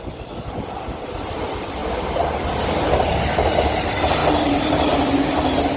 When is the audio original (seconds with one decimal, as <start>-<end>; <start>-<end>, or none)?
0.0-1.8; 2.8-5.8